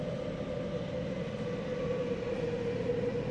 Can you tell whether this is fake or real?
real